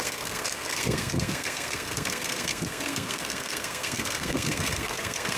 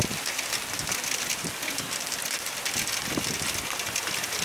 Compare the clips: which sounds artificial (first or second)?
first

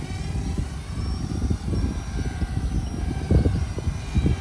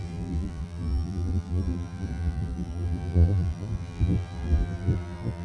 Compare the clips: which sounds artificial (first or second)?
second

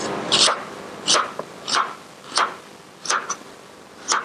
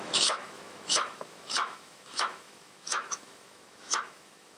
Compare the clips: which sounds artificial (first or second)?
second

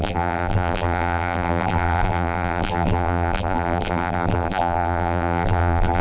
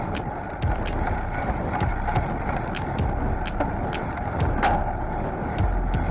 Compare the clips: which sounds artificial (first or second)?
first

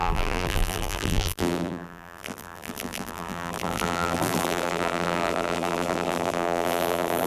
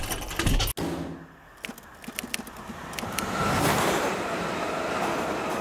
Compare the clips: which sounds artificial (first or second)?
first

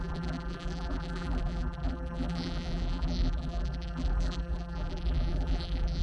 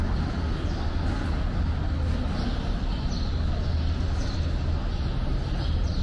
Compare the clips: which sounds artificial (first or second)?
first